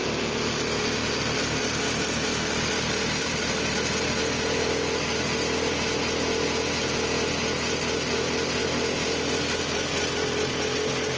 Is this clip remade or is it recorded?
recorded